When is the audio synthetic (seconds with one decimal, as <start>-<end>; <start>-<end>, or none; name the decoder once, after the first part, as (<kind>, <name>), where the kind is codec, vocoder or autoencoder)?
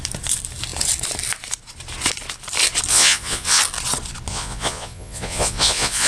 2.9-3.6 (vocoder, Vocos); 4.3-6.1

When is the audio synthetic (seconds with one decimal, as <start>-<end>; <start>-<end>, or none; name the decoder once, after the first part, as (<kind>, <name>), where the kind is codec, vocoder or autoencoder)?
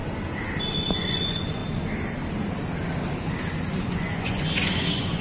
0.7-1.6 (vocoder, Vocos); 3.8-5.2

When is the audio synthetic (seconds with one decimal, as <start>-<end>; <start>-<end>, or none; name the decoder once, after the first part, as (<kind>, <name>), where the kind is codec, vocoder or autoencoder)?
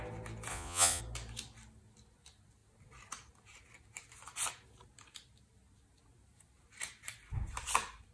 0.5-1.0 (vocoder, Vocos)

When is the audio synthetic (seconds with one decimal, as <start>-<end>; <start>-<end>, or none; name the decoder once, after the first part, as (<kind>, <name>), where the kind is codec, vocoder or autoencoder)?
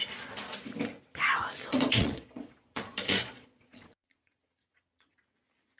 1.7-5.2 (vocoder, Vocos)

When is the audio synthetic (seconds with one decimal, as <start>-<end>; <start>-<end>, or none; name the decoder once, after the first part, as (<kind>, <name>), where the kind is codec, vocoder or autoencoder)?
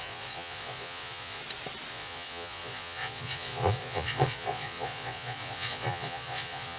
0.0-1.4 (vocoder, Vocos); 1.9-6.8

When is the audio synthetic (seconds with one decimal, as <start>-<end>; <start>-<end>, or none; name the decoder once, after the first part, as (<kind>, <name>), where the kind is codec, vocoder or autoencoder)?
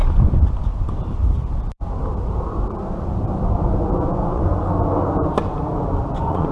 3.9-4.5 (vocoder, Vocos); 6.1-6.5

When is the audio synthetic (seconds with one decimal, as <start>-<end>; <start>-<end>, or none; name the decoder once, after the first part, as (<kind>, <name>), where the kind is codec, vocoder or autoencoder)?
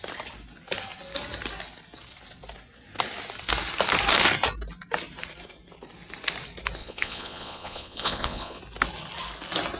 6.8-8.6 (vocoder, Vocos)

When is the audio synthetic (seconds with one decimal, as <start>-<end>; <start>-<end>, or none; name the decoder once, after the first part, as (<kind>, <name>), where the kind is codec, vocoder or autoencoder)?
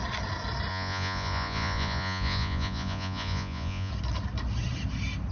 0.7-3.9 (vocoder, Vocos)